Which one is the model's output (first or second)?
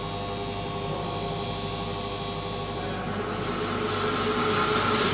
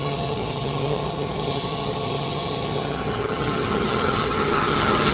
second